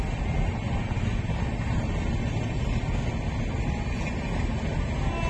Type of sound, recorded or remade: recorded